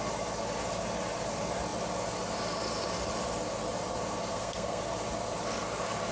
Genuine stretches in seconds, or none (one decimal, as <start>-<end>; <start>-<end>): 0.0-4.3; 4.8-6.1